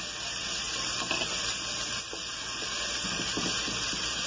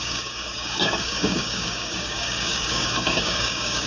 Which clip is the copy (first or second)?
second